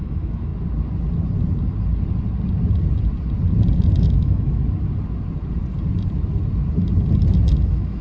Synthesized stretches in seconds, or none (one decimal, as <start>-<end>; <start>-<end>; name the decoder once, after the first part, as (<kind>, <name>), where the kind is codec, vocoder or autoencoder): 0.0-0.5 (autoencoder, DAC-VAE); 4.0-4.6; 7.6-8.0